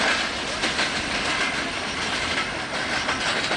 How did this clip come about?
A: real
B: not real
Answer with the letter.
A